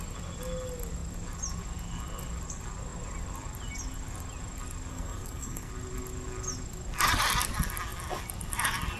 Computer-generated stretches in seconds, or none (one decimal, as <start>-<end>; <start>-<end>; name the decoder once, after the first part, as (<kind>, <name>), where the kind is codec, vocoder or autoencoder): 4.9-5.7 (codec, SNAC)